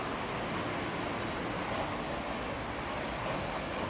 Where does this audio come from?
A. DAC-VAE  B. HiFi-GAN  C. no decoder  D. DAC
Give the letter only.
C